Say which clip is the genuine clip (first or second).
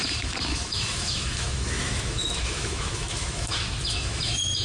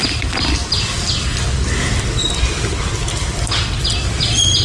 second